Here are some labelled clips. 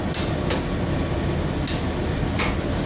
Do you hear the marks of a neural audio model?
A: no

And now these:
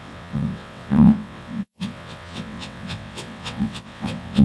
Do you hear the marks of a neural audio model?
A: yes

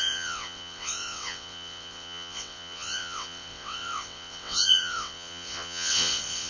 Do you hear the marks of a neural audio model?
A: yes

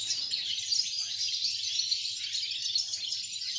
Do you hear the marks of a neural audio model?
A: no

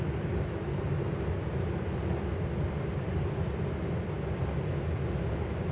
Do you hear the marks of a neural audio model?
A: no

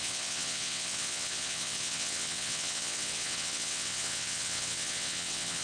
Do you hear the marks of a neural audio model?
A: yes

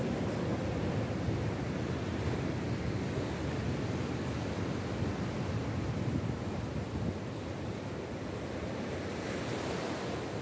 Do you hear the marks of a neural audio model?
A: no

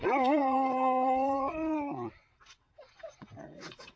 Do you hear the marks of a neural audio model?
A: yes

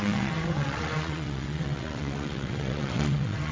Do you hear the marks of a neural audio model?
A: yes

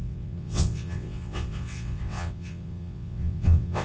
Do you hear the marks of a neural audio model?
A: yes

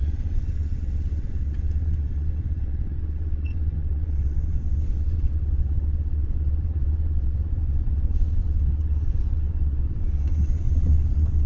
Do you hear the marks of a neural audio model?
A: yes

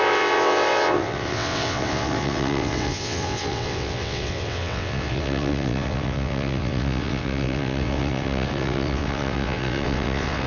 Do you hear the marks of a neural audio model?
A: yes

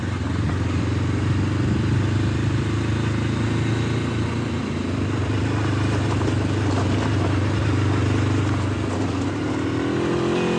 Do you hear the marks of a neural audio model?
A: no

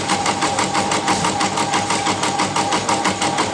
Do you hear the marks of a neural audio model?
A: no